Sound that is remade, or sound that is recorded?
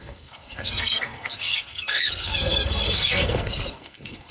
remade